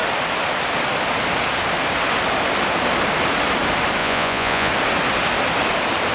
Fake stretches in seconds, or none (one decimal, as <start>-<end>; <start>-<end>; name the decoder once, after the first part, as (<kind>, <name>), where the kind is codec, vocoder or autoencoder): 4.0-4.7 (vocoder, Vocos)